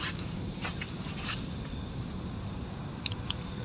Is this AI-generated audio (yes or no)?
yes